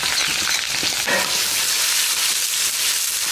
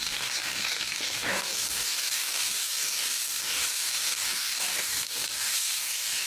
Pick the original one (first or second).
first